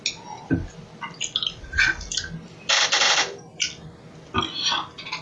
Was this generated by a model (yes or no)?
no